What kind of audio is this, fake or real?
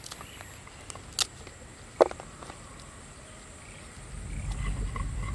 real